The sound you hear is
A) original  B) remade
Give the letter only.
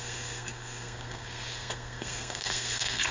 B